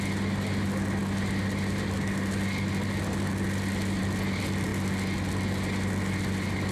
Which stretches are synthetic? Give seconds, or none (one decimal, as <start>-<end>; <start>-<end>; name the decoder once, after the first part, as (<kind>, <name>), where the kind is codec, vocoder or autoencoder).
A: none